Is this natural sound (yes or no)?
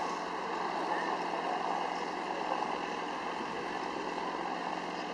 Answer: yes